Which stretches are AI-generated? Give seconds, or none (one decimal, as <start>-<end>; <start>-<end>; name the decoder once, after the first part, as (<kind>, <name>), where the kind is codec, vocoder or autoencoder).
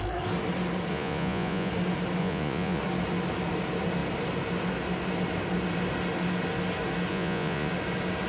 0.9-1.7 (vocoder, Vocos); 2.2-2.8; 7.1-7.7